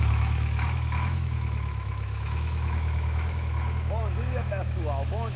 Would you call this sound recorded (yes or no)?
no